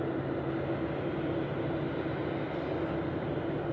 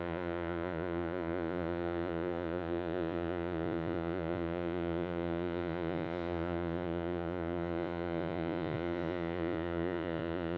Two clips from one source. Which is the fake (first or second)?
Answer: second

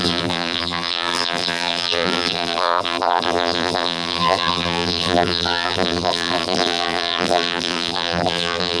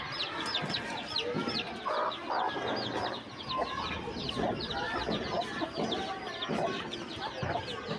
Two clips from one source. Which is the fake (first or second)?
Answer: first